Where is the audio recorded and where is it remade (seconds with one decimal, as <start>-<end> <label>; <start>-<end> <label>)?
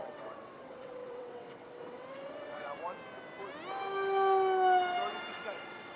0.0-2.7 remade; 2.7-5.3 recorded; 5.3-6.0 remade